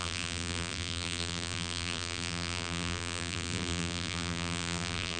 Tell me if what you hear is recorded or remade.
remade